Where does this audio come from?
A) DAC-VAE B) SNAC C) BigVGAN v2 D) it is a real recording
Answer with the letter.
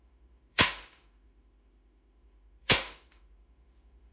A